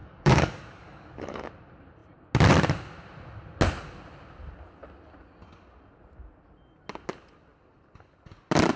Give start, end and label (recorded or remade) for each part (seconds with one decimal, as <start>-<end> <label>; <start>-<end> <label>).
0.0-1.5 remade; 1.5-8.8 recorded